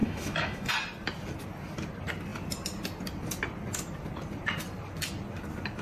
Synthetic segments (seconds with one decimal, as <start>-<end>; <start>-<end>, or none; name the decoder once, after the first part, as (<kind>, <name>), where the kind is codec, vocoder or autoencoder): 0.0-0.7 (autoencoder, DAC-VAE)